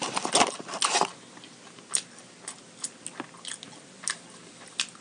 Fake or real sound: real